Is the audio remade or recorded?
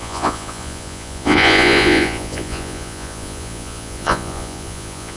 remade